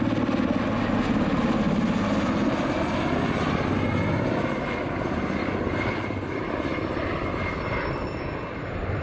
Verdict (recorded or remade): recorded